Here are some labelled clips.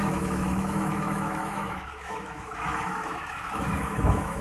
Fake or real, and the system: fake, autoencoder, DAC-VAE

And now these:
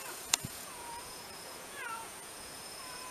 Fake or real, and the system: fake, vocoder, Vocos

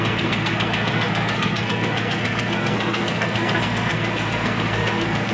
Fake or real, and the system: fake, codec, SNAC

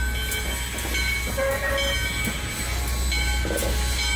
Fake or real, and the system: real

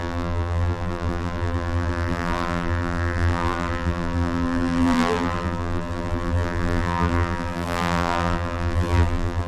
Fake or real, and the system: fake, vocoder, BigVGAN v2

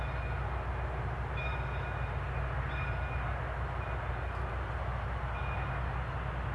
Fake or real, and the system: real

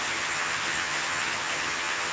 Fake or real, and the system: fake, vocoder, HiFi-GAN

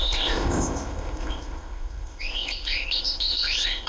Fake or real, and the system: fake, codec, ZipCodec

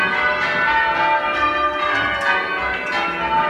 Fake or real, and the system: real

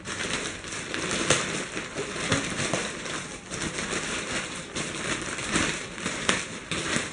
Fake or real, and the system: fake, vocoder, BigVGAN v2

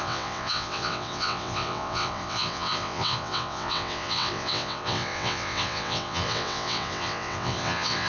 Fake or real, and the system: fake, vocoder, WaveNeXt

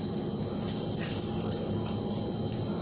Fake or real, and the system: real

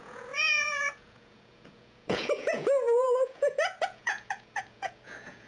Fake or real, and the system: fake, vocoder, Vocos